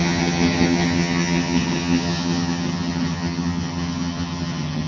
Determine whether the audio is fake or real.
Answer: fake